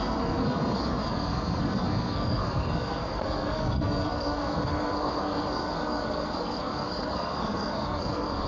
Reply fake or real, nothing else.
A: fake